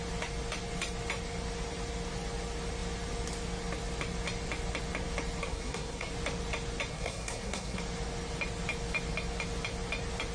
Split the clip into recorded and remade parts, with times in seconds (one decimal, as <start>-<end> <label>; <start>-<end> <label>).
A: 0.0-5.5 recorded; 5.5-6.1 remade; 6.1-6.9 recorded; 6.9-7.8 remade; 7.8-10.3 recorded